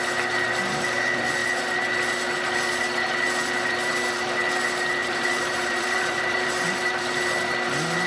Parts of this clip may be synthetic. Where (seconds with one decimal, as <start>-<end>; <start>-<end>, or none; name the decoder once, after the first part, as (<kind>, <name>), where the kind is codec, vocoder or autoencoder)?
5.0-7.0 (vocoder, BigVGAN v2)